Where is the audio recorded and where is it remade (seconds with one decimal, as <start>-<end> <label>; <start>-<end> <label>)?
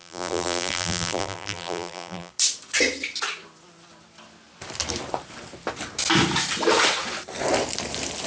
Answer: 0.0-2.3 remade; 2.3-8.3 recorded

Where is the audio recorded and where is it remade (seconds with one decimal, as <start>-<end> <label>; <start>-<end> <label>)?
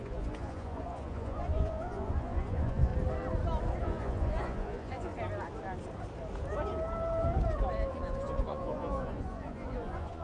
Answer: 0.0-2.9 remade; 2.9-3.8 recorded; 3.8-5.1 remade; 5.1-7.9 recorded; 7.9-10.2 remade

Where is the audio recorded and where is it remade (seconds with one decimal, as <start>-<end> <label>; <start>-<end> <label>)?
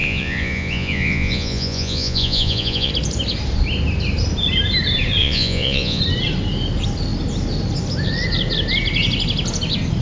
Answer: 0.0-2.9 remade; 2.9-5.2 recorded; 5.2-6.0 remade; 6.0-10.0 recorded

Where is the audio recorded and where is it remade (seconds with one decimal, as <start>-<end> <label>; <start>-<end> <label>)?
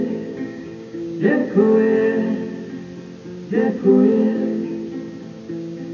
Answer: 0.0-1.4 remade; 1.4-3.9 recorded; 3.9-4.7 remade; 4.7-5.5 recorded; 5.5-5.9 remade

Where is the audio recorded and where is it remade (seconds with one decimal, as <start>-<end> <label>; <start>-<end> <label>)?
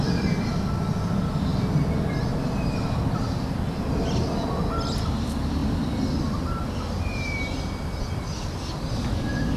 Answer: 0.0-9.6 recorded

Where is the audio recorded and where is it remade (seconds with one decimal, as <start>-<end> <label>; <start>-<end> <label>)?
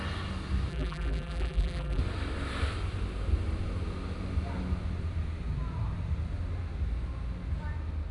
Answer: 0.0-0.7 recorded; 0.7-2.0 remade; 2.0-8.1 recorded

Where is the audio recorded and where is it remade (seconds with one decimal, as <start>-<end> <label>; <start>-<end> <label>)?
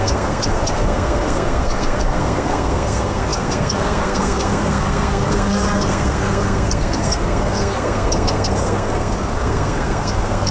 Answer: 0.0-10.5 remade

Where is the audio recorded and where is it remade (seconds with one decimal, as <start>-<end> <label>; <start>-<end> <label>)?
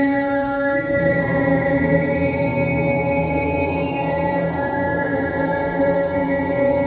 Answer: 0.0-2.5 remade; 2.5-3.2 recorded; 3.2-6.9 remade